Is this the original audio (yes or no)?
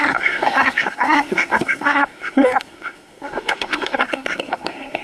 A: no